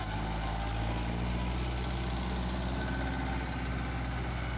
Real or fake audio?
real